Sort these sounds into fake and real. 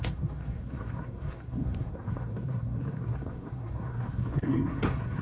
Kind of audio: fake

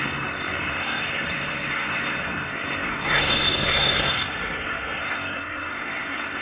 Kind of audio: fake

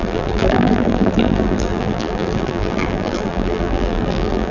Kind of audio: fake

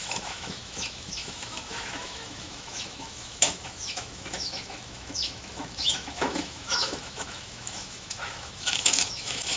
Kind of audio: fake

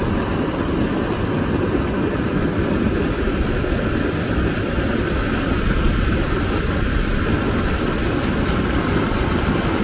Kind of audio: real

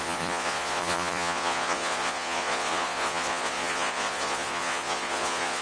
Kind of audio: fake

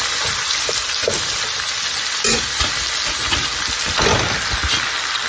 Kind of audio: real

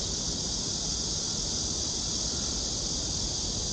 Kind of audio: real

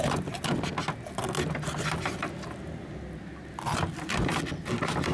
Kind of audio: real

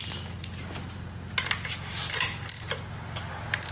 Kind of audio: real